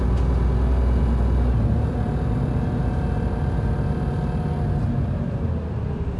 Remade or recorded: recorded